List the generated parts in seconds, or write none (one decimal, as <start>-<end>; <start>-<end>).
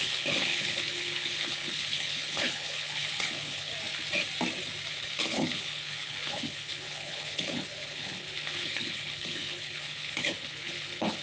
0.0-3.7; 4.9-11.2